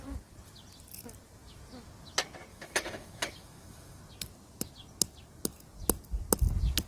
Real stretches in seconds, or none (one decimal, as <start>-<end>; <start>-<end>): 0.0-2.5; 4.0-6.9